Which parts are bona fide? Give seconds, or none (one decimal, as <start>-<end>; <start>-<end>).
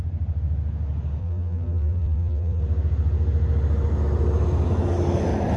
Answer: 0.0-1.2; 2.6-5.6